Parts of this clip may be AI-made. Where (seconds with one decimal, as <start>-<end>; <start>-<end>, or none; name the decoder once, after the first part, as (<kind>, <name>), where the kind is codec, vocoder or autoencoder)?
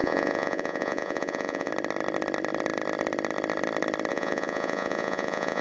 0.0-1.7 (vocoder, Vocos); 4.1-5.6